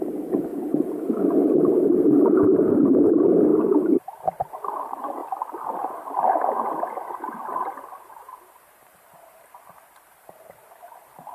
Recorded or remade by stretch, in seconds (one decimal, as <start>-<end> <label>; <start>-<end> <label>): 0.0-0.5 remade; 0.5-1.2 recorded; 1.2-5.2 remade; 5.2-7.1 recorded; 7.1-11.3 remade